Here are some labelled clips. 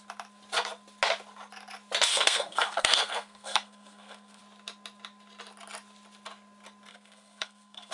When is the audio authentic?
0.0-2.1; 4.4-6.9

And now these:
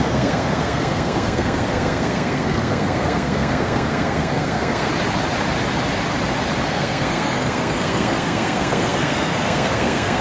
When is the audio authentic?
4.9-6.7

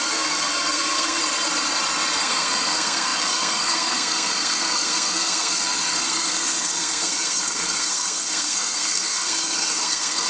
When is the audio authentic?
1.2-2.2

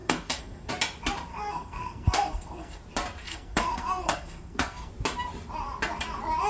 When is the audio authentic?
0.7-1.3; 2.8-3.2; 4.9-6.5

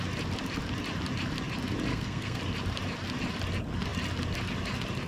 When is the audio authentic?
0.0-1.9; 2.4-5.1